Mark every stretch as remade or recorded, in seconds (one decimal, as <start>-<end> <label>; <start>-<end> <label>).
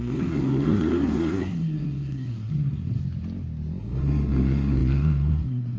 0.0-3.0 remade; 3.0-3.8 recorded; 3.8-5.8 remade